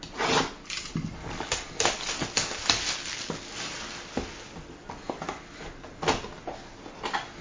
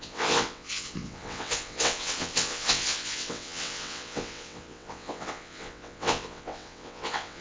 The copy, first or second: second